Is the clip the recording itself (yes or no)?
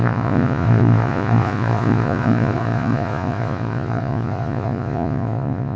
no